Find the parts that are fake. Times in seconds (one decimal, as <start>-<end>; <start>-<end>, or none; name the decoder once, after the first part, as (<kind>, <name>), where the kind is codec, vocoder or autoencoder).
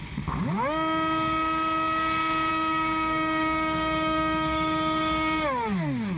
2.5-6.2 (codec, DAC)